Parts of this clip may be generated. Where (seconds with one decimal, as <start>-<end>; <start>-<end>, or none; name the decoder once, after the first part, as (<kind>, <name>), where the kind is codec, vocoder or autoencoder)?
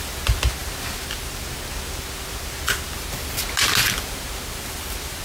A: none